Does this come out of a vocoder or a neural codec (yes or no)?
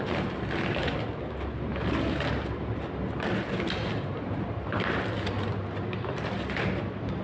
no